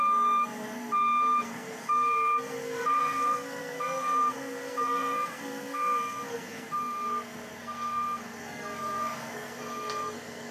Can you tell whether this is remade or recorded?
remade